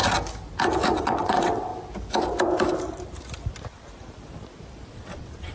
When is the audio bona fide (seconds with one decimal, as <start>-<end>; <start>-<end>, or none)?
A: 0.0-1.0; 1.7-4.9